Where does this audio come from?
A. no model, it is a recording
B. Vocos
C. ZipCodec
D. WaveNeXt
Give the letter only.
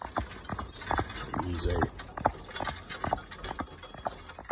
A